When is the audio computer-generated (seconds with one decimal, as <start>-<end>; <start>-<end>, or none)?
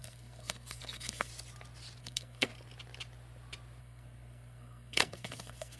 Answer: 0.0-1.3; 2.0-2.5; 3.8-5.8